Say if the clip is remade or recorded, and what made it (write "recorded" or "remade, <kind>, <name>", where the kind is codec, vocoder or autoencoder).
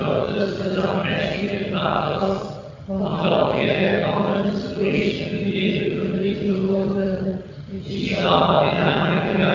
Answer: remade, vocoder, HiFi-GAN